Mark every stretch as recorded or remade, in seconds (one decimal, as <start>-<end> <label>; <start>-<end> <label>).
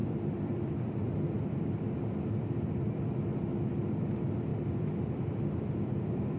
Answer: 0.0-3.1 remade; 3.1-4.5 recorded; 4.5-6.4 remade